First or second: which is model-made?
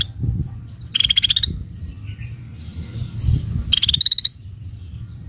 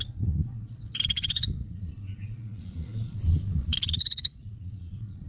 second